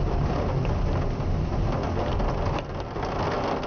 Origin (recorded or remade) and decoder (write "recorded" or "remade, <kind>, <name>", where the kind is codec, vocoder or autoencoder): recorded